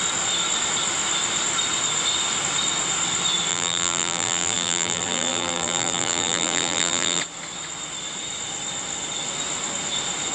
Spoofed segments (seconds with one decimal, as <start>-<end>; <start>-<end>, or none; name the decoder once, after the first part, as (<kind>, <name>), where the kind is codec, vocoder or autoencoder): 3.5-7.2 (vocoder, BigVGAN v2)